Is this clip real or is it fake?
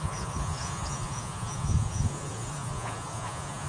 fake